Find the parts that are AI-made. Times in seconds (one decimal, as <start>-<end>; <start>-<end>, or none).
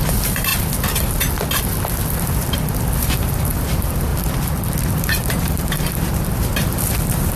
0.0-0.5; 3.0-4.1; 5.0-7.4